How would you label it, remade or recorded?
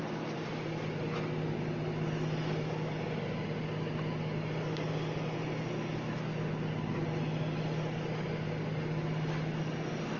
recorded